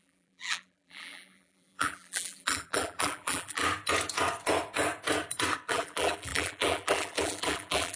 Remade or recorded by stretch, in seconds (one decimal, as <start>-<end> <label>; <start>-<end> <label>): 0.0-3.6 remade; 3.6-5.7 recorded; 5.7-8.0 remade